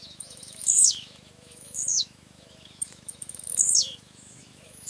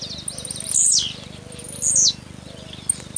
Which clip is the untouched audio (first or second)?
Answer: second